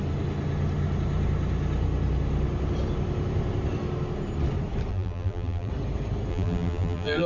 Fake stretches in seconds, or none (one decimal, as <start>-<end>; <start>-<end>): 4.9-5.7; 6.3-7.3